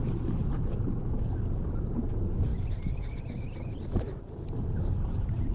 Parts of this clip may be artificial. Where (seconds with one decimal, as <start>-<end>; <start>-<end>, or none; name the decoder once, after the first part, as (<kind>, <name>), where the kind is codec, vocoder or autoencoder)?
none